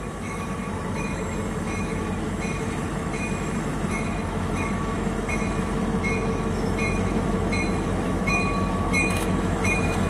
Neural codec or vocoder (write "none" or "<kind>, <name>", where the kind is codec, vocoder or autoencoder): autoencoder, DAC-VAE